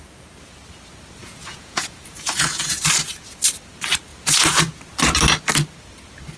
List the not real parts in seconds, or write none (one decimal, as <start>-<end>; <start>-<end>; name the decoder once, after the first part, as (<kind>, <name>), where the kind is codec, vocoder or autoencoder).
1.2-2.9 (vocoder, Vocos); 4.1-4.8